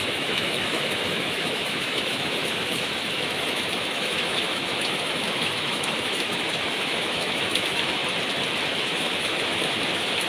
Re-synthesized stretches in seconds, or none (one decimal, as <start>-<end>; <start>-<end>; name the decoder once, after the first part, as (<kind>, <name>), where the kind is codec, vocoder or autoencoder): 0.0-8.0 (autoencoder, DAC-VAE); 8.7-10.3